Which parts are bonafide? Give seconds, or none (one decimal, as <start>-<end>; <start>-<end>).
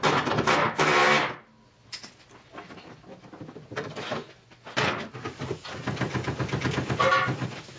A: 0.0-7.8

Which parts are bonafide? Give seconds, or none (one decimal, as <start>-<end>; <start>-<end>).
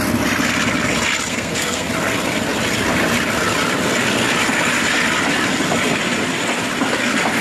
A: 0.0-1.3; 1.9-7.4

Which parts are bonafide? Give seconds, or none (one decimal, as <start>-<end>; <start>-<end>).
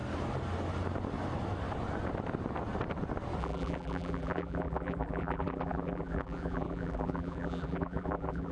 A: 0.0-3.4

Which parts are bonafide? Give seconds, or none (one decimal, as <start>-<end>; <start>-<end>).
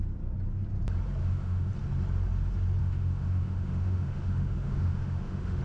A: 0.0-1.2; 1.7-2.8